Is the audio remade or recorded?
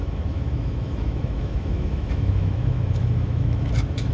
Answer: remade